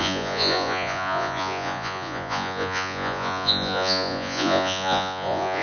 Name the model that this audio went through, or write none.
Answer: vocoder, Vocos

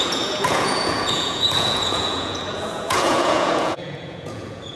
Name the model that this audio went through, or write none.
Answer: vocoder, Vocos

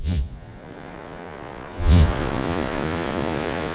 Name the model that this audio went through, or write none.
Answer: vocoder, Vocos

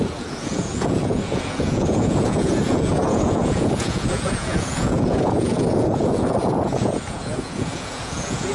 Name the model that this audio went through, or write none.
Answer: vocoder, Vocos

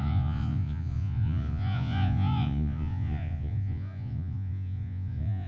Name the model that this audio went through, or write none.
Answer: vocoder, Vocos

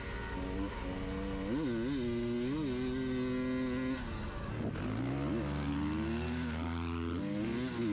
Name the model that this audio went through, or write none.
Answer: none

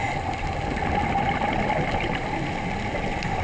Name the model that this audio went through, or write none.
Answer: none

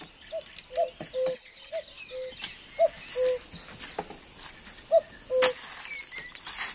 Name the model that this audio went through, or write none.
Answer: none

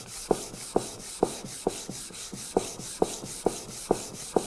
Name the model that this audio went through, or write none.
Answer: none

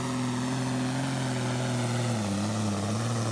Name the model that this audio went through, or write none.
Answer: none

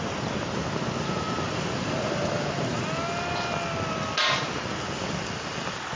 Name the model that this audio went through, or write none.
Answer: none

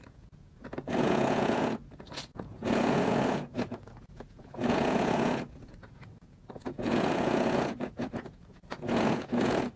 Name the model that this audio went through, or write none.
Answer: vocoder, Vocos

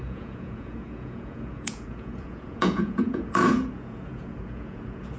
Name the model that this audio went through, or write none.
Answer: vocoder, Vocos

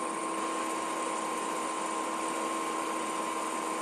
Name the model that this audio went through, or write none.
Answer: none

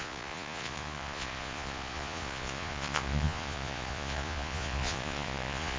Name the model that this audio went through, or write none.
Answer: vocoder, Vocos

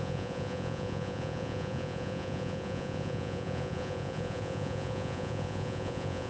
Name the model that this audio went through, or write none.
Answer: vocoder, Vocos